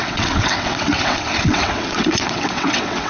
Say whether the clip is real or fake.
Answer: fake